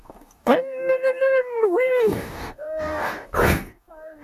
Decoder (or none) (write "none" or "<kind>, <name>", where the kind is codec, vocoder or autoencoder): codec, DAC